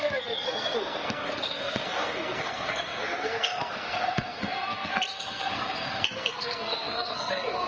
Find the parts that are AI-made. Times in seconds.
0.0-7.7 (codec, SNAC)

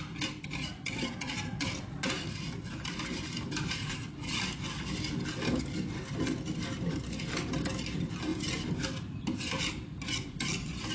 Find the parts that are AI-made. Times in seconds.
none

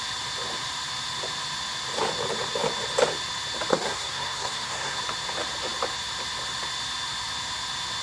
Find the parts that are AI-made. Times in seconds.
3.7-5.0 (codec, SNAC)

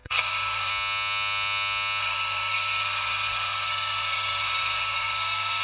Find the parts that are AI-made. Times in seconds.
0.0-0.7 (codec, SNAC); 2.0-5.6

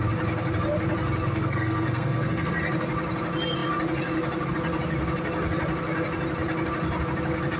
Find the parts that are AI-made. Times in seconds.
1.3-2.5 (codec, SNAC)

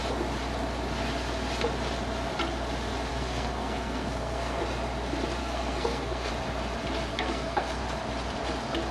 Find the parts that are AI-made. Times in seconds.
3.1-4.6 (codec, SNAC); 5.4-6.3; 7.1-7.8

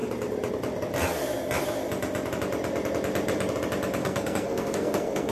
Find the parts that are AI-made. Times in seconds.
4.0-5.3 (codec, SNAC)

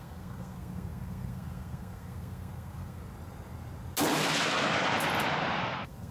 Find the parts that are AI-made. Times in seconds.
0.0-3.0 (codec, SNAC); 5.6-6.1